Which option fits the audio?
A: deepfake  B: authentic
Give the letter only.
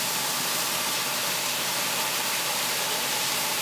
A